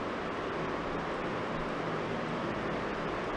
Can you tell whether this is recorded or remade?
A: recorded